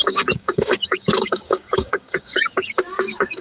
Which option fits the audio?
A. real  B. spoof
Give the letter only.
B